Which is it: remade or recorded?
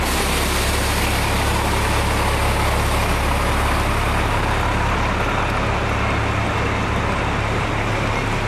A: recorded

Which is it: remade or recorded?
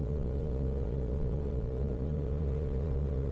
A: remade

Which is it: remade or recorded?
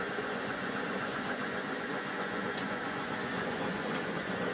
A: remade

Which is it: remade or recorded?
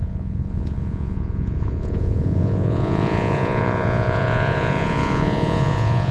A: remade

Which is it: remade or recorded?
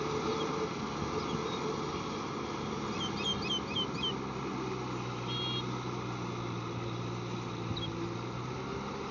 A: recorded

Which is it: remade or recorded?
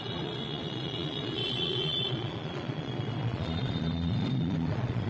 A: remade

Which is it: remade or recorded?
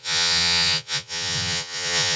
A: remade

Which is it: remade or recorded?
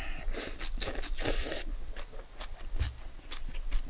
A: recorded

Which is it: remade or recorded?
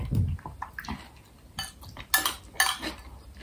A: recorded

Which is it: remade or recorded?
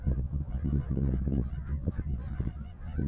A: remade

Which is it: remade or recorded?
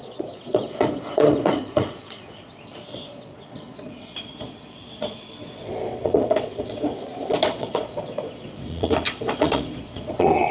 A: remade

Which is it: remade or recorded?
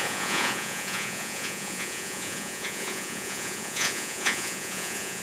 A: remade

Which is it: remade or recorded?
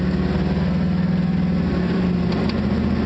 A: recorded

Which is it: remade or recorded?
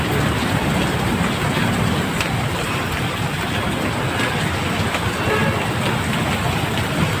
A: recorded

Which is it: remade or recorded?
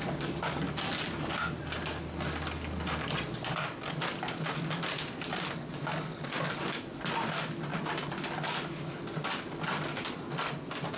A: recorded